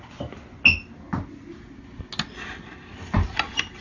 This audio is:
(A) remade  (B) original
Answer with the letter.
B